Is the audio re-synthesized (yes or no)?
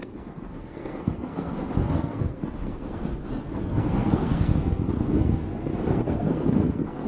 yes